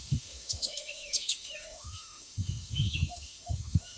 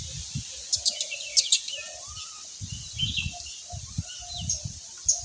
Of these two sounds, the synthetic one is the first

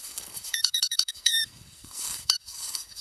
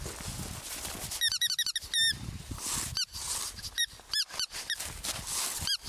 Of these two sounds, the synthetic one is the first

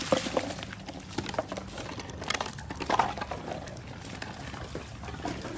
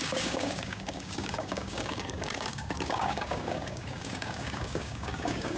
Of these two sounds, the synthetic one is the second